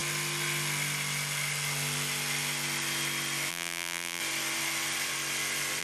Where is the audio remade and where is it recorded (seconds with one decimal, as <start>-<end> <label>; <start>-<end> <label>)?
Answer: 0.0-3.5 recorded; 3.5-4.2 remade; 4.2-5.8 recorded